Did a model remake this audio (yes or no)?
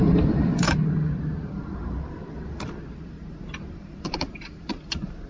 yes